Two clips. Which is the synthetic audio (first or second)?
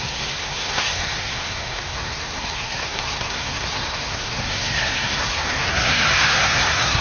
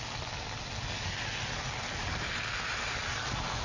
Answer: first